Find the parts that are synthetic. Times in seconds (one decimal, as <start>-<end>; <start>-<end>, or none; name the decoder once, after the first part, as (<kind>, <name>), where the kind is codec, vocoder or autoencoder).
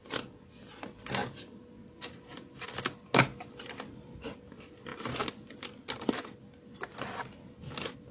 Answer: none